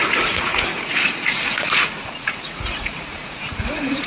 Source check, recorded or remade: remade